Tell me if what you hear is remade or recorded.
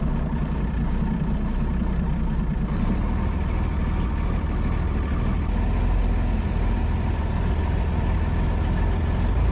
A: recorded